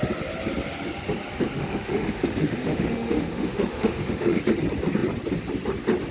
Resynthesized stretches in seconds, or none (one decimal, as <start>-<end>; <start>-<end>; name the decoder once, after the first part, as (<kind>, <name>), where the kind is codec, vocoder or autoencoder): 1.6-4.4 (autoencoder, DAC-VAE)